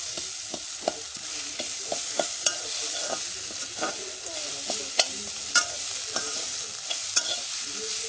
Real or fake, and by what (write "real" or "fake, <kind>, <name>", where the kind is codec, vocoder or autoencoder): real